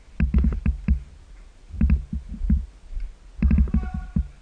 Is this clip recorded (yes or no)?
yes